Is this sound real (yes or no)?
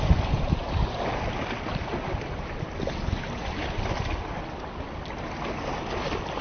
yes